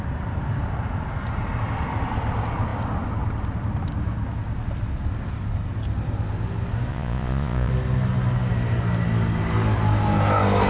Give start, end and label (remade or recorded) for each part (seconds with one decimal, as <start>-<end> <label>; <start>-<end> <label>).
0.0-6.9 recorded; 6.9-7.7 remade; 7.7-10.7 recorded